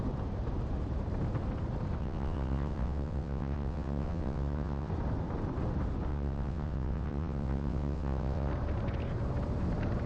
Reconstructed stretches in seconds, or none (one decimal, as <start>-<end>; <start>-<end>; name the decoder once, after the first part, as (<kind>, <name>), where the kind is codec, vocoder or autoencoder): 2.0-4.9 (vocoder, WaveNeXt); 6.1-8.5